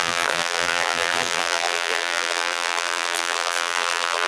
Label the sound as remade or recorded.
remade